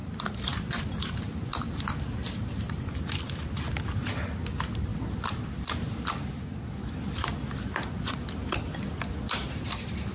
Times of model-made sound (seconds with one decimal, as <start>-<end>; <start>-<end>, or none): 0.0-2.9

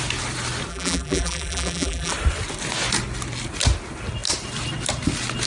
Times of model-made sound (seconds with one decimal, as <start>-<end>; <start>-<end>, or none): 0.7-2.1

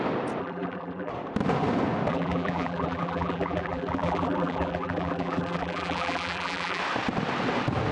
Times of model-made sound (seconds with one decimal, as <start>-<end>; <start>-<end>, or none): 0.4-1.1; 2.1-6.8